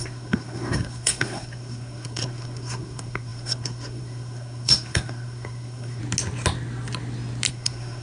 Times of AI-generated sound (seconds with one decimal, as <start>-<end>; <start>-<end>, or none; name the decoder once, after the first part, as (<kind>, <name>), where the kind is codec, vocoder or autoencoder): 0.0-6.0 (codec, SNAC); 7.5-8.0